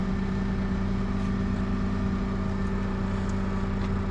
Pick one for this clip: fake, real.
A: real